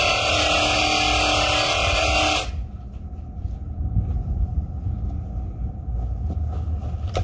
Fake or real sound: real